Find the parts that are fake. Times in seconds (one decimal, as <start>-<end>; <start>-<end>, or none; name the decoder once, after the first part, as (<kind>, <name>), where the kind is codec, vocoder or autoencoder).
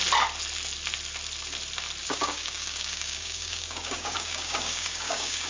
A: 2.0-5.5 (codec, DAC)